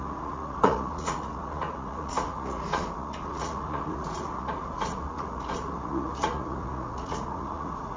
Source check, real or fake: fake